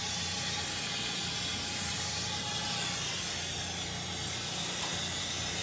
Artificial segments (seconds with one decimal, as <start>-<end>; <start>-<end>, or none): 1.5-2.4